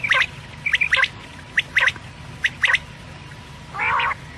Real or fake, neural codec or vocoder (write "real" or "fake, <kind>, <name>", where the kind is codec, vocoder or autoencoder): real